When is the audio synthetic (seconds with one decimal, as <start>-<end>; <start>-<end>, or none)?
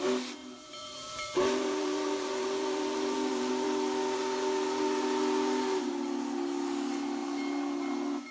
0.4-3.5